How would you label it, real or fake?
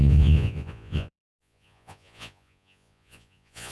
fake